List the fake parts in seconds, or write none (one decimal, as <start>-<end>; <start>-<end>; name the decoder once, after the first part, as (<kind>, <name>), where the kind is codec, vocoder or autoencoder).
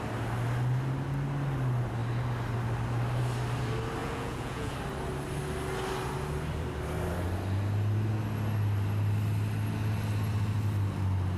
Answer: 4.0-4.7 (vocoder, Vocos)